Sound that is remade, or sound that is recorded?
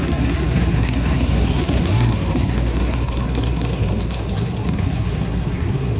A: remade